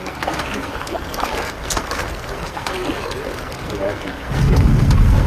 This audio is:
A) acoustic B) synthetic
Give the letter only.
B